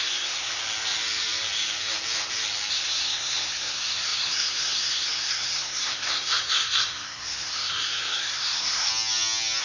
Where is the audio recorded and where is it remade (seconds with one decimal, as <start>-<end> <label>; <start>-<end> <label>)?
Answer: 0.0-0.6 remade; 0.6-2.7 recorded; 2.7-8.9 remade; 8.9-9.6 recorded